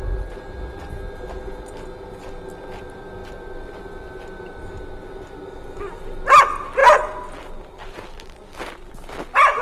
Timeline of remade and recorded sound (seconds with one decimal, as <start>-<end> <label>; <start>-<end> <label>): 0.0-9.6 recorded

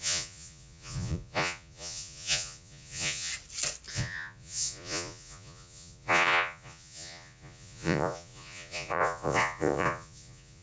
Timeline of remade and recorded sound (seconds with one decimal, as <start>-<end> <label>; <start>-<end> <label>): 0.0-3.3 remade; 3.3-3.9 recorded; 3.9-10.6 remade